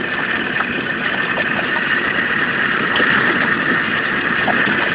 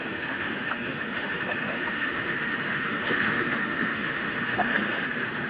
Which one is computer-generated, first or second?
second